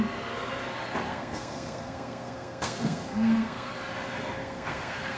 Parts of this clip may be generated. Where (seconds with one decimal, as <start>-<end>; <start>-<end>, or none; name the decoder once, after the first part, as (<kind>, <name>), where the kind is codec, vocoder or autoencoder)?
1.1-3.7 (codec, SNAC); 4.4-5.2